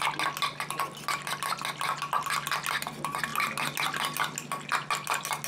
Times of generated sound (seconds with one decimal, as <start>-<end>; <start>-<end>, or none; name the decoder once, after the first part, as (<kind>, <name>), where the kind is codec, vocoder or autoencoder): none